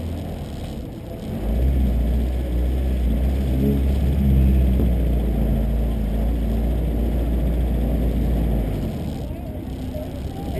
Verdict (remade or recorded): recorded